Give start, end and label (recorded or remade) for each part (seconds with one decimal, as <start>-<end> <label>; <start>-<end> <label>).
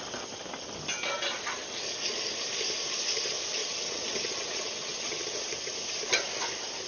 0.0-3.6 recorded; 3.6-5.5 remade; 5.5-6.9 recorded